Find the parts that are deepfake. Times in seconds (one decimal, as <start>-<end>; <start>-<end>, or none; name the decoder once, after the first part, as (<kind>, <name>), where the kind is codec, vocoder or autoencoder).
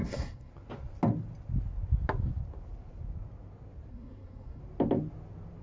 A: 0.0-0.5 (codec, SNAC); 3.9-4.6